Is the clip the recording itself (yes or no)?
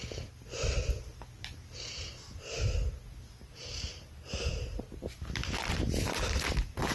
yes